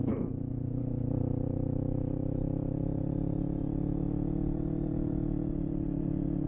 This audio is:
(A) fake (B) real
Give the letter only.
B